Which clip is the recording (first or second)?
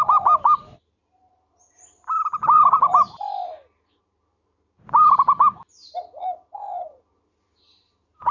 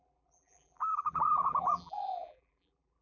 first